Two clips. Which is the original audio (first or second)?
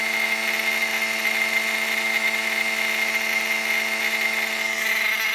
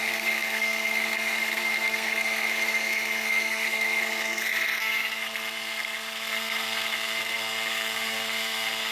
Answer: first